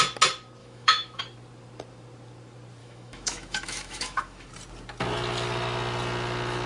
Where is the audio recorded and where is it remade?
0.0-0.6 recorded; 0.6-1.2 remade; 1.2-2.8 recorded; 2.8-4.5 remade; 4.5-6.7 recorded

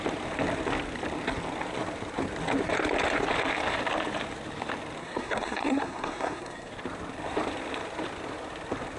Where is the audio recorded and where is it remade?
0.0-5.0 recorded; 5.0-6.7 remade; 6.7-9.0 recorded

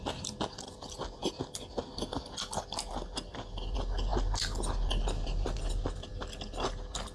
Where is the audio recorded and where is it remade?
0.0-7.1 recorded

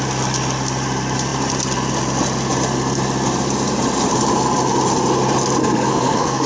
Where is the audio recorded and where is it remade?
0.0-5.6 recorded; 5.6-6.5 remade

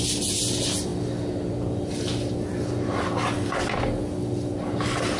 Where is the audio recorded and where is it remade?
0.0-5.2 recorded

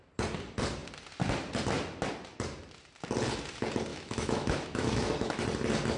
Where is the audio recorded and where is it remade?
0.0-3.9 recorded; 3.9-5.4 remade; 5.4-6.0 recorded

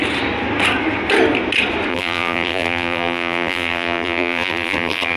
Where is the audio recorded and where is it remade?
0.0-1.9 recorded; 1.9-5.2 remade

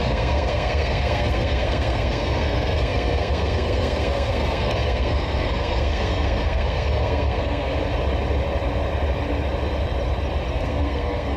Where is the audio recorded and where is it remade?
0.0-7.7 remade; 7.7-10.5 recorded; 10.5-11.4 remade